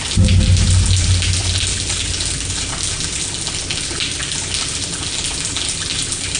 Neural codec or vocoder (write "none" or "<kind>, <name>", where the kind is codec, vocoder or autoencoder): none